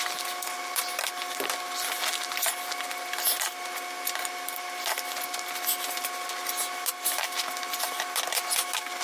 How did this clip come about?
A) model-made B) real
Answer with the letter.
B